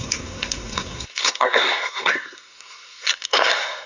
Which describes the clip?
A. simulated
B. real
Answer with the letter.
A